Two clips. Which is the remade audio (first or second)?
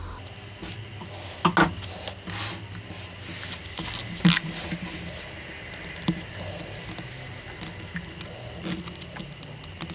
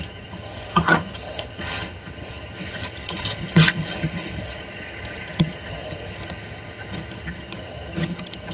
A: second